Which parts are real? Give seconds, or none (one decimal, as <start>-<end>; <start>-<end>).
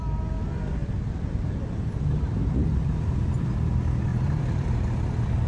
0.0-0.8; 3.4-4.1; 5.1-5.5